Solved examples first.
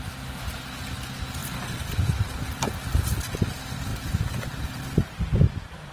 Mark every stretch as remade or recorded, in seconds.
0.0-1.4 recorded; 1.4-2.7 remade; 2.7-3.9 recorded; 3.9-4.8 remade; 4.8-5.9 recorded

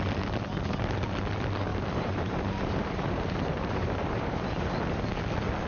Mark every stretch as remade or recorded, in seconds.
0.0-1.7 recorded; 1.7-4.7 remade; 4.7-5.7 recorded

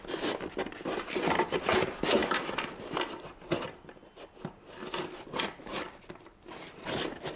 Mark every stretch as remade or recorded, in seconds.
0.0-7.4 recorded

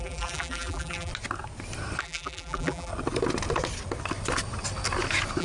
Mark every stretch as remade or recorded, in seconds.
0.0-1.1 remade; 1.1-2.0 recorded; 2.0-2.9 remade; 2.9-5.4 recorded

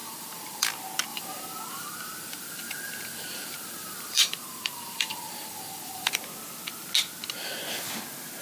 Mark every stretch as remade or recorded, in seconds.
0.0-0.7 remade; 0.7-1.1 recorded; 1.1-6.1 remade; 6.1-8.4 recorded

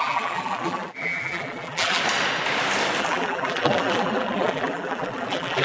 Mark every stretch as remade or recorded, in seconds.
0.0-2.0 remade; 2.0-3.0 recorded; 3.0-5.6 remade

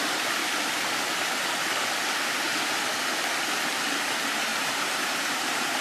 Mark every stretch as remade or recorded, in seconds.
0.0-0.4 remade; 0.4-3.9 recorded; 3.9-5.8 remade